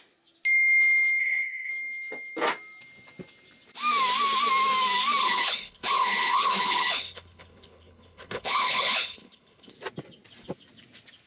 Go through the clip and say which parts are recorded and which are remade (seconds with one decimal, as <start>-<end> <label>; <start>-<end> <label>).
0.0-1.2 recorded; 1.2-1.7 remade; 1.7-5.2 recorded; 5.2-9.7 remade; 9.7-11.3 recorded